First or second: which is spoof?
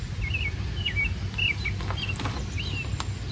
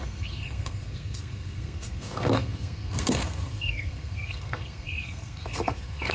second